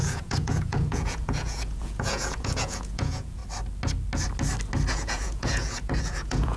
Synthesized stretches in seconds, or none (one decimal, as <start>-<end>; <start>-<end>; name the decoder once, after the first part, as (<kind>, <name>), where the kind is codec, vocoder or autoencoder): 0.0-3.4 (vocoder, Vocos); 4.9-6.6